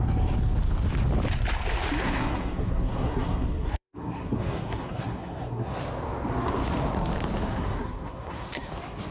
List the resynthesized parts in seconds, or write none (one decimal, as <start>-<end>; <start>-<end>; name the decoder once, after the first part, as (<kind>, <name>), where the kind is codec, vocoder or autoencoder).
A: 2.0-5.8 (codec, SNAC); 7.5-8.7